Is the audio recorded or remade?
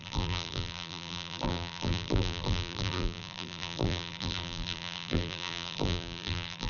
remade